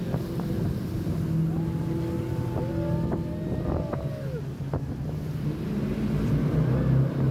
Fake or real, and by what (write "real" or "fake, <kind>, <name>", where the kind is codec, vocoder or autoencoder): real